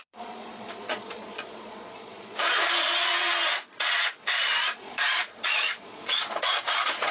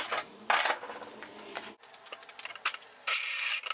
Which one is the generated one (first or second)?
first